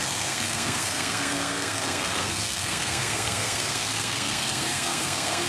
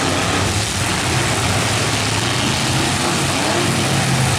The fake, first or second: first